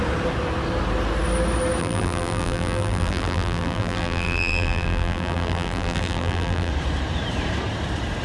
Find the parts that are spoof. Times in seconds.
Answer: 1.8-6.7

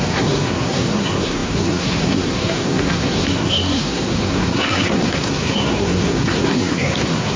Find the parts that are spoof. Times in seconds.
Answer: 0.0-7.4

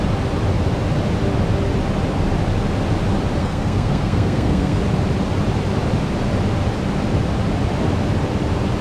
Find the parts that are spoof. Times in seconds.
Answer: 3.4-4.8